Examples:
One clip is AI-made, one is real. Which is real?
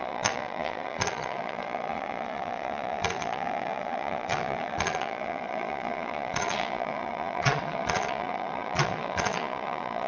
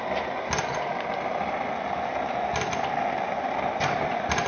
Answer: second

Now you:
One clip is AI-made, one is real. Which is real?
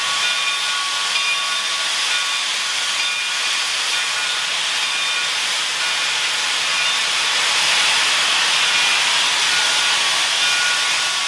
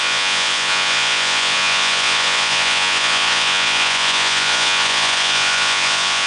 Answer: first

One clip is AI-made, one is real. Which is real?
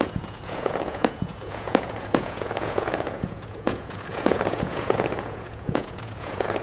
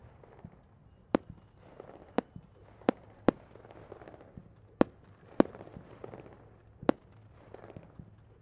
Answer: second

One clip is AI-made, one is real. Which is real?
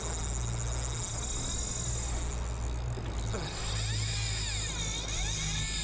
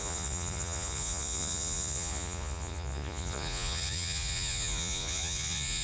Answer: first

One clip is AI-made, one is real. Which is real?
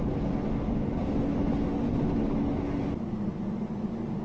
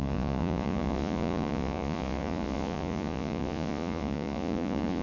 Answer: first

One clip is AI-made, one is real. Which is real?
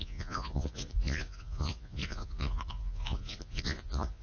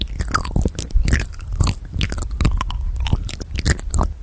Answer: second